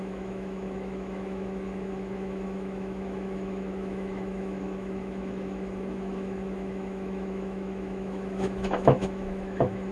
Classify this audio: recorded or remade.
remade